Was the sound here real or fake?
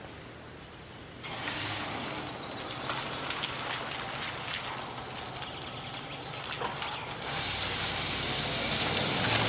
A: real